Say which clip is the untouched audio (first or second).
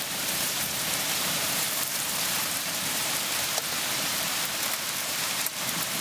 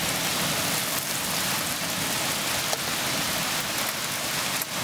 second